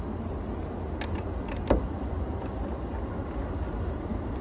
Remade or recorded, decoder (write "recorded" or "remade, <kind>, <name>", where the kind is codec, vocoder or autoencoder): recorded